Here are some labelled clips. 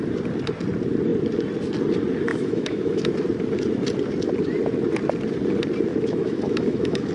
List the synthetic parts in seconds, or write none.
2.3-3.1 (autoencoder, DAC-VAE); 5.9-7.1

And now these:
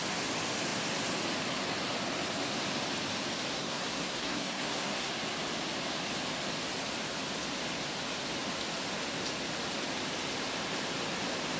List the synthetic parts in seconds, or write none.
3.5-5.1 (codec, SNAC)

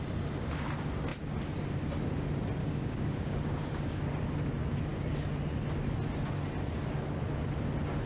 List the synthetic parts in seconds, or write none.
2.6-4.1 (codec, DAC)

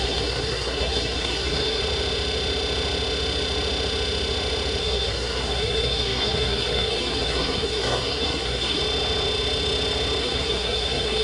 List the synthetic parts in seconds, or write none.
0.0-1.8 (codec, SNAC); 4.8-8.8; 10.2-11.2